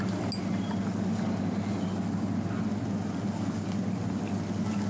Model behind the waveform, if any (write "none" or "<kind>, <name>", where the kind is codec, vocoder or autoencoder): none